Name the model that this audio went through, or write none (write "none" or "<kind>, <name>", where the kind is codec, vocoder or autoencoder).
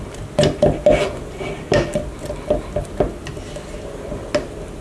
none